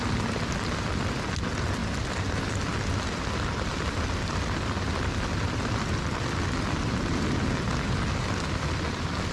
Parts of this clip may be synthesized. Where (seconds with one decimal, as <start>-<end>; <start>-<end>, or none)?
none